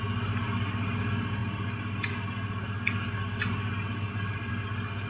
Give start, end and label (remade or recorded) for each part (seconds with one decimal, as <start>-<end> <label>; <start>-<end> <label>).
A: 0.0-5.1 recorded